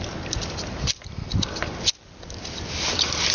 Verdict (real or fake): real